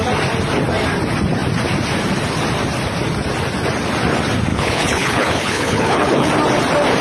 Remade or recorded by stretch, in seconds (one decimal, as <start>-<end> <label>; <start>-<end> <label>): 0.0-4.5 recorded; 4.5-6.3 remade; 6.3-7.0 recorded